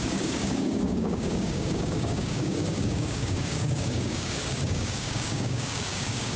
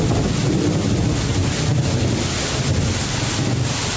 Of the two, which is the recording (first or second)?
second